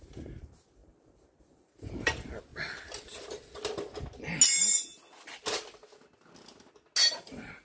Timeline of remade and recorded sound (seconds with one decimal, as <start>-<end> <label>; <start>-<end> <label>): 0.0-2.5 remade; 2.5-7.1 recorded; 7.1-7.6 remade